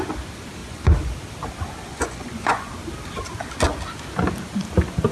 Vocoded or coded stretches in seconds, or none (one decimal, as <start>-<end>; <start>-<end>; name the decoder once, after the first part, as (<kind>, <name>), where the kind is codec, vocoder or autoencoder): 0.6-1.1 (vocoder, Vocos); 1.9-2.7